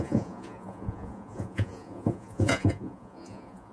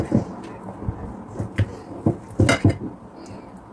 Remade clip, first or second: first